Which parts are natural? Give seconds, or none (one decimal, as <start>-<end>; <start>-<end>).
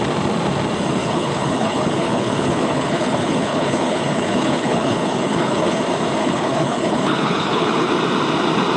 0.0-1.0; 5.8-6.2; 7.9-8.8